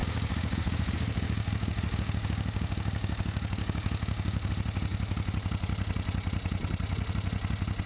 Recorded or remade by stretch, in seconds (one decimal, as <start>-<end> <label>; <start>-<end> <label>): 0.0-4.5 remade; 4.5-7.9 recorded